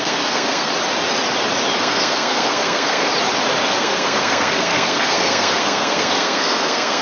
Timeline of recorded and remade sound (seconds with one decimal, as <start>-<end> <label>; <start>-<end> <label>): 0.0-0.7 remade; 0.7-1.8 recorded; 1.8-3.1 remade; 3.1-3.8 recorded; 3.8-7.0 remade